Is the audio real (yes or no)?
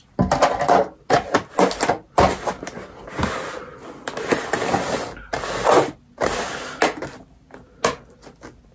yes